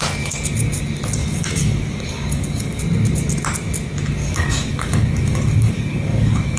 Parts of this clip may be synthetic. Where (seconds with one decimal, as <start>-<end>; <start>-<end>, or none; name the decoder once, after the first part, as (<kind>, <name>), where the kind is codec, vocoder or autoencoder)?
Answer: 1.2-2.8 (codec, DAC); 4.2-6.6